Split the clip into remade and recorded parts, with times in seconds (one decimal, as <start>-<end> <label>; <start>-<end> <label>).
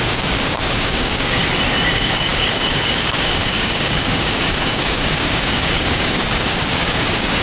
0.0-1.4 remade; 1.4-1.9 recorded; 1.9-7.4 remade